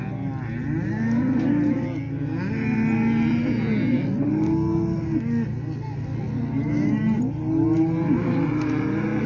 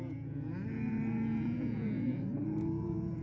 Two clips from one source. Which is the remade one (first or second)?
second